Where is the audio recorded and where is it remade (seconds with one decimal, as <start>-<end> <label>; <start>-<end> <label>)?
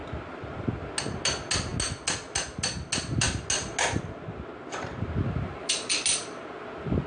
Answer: 0.0-5.2 recorded; 5.2-5.9 remade; 5.9-7.1 recorded